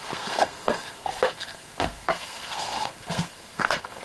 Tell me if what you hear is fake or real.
fake